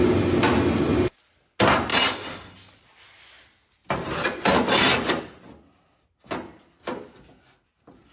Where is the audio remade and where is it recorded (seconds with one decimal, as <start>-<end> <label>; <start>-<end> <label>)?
0.0-3.8 recorded; 3.8-5.2 remade; 5.2-8.1 recorded